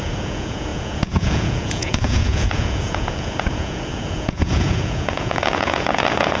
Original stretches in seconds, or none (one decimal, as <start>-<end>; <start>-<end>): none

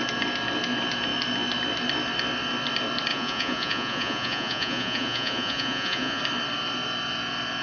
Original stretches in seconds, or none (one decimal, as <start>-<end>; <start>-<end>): 0.0-3.1; 6.2-7.6

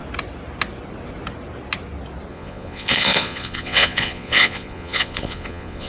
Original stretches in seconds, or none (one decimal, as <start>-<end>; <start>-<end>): 0.0-2.3